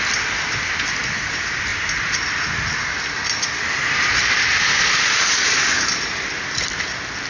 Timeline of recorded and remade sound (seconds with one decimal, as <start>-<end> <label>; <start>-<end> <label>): 0.0-7.3 recorded